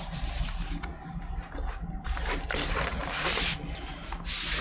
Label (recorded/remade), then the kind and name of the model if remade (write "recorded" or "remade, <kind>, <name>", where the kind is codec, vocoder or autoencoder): recorded